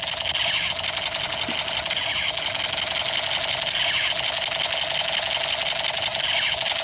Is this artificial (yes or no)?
no